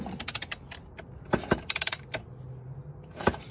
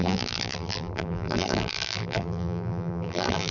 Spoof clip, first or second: second